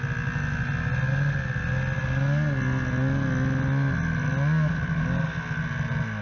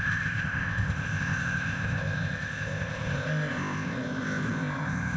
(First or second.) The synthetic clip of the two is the second